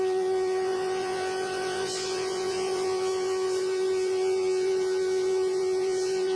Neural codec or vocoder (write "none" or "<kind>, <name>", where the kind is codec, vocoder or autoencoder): vocoder, Vocos